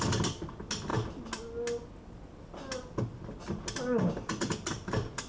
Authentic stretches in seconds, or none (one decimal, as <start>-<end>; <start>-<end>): 0.0-4.7